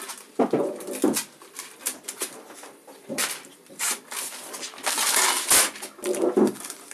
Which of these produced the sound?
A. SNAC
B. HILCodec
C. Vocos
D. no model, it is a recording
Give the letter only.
D